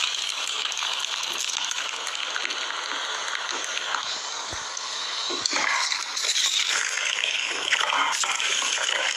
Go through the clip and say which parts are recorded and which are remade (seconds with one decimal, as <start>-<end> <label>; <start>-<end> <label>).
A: 0.0-2.2 remade; 2.2-3.4 recorded; 3.4-9.2 remade